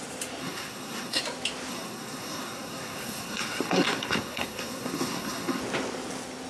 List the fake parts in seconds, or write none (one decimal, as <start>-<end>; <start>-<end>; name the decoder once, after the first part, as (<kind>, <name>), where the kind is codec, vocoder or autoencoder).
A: 0.4-1.2 (codec, SNAC); 1.7-5.6